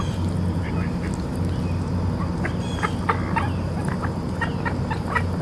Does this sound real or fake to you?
real